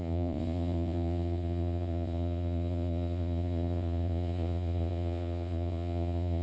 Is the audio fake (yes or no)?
yes